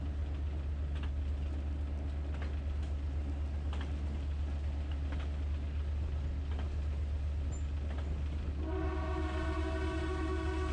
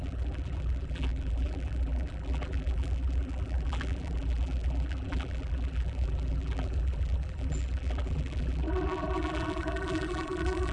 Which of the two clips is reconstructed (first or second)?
second